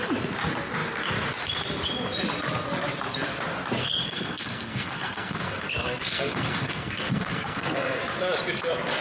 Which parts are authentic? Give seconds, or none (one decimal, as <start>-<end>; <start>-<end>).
0.0-3.8; 8.0-9.0